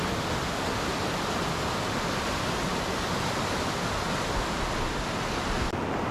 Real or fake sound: real